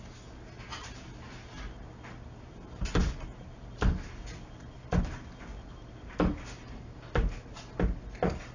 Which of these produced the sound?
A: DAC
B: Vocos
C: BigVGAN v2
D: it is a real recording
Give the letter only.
D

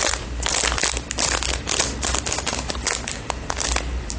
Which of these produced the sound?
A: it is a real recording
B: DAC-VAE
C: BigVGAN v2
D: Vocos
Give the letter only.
A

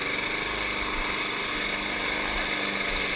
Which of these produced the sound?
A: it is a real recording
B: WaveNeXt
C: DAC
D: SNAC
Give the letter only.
A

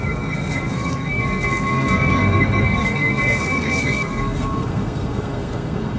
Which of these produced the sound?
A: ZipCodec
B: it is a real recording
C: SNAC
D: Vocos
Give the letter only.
C